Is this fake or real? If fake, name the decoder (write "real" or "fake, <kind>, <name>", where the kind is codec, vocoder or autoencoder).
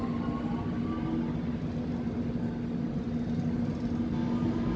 real